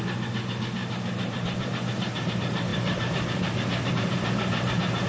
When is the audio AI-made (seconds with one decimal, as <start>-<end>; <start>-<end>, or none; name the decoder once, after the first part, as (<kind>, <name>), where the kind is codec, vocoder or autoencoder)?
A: 0.8-2.3 (vocoder, BigVGAN v2)